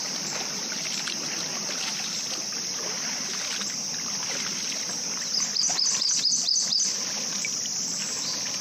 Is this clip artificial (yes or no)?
no